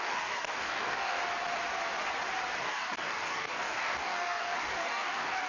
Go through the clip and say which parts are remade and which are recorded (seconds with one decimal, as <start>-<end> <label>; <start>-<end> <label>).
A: 0.0-1.2 remade; 1.2-2.6 recorded; 2.6-5.5 remade